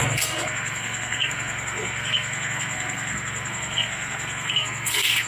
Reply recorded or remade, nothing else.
remade